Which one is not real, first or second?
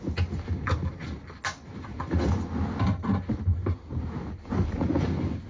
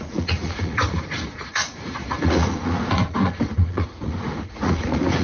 second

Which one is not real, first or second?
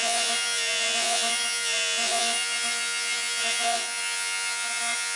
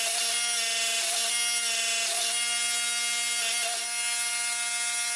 first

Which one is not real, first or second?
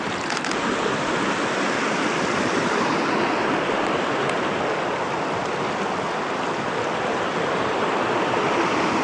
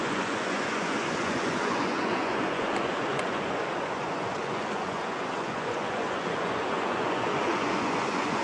second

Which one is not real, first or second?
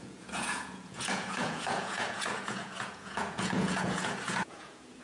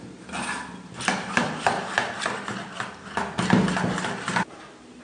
first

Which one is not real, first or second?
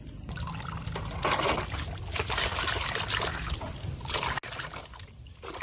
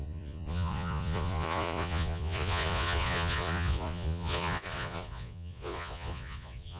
second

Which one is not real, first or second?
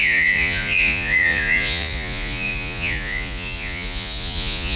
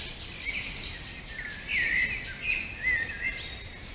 first